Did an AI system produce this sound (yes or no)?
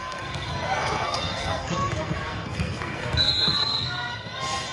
yes